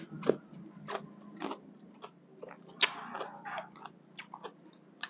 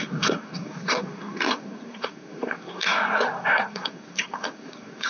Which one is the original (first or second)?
first